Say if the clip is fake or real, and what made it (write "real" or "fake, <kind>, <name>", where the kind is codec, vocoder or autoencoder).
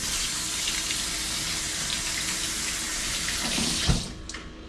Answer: real